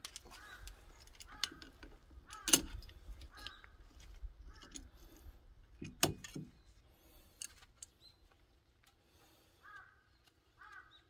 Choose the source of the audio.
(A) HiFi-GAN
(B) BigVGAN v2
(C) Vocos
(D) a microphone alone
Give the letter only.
D